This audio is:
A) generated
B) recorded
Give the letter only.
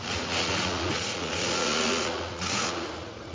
A